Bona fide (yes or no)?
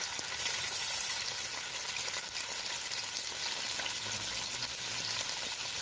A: no